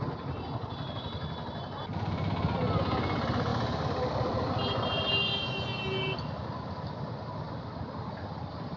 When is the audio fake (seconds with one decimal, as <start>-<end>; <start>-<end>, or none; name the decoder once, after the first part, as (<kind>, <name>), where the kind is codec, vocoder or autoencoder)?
none